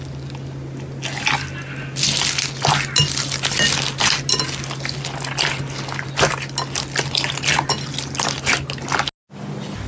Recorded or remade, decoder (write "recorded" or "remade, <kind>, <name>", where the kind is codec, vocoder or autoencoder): recorded